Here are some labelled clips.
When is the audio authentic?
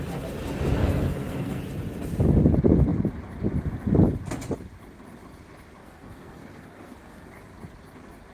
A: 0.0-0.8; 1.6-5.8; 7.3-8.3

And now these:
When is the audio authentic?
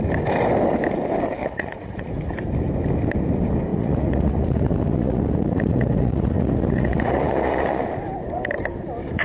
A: 0.0-1.4; 2.1-3.7; 7.8-9.2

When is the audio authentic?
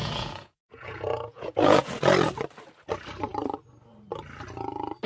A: 1.9-5.1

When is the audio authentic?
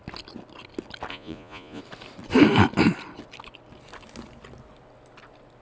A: 0.0-1.1; 1.8-5.6